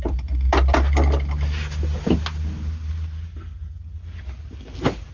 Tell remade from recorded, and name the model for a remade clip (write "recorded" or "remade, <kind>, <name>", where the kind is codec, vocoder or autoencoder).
recorded